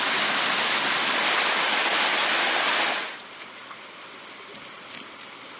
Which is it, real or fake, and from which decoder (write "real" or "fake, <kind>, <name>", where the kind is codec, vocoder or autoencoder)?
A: real